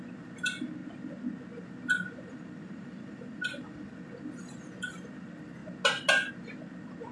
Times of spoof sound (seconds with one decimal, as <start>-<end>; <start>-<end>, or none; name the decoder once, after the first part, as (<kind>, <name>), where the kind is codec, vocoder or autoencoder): 2.6-3.9 (vocoder, BigVGAN v2)